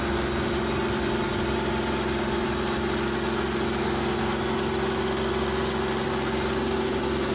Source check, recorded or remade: recorded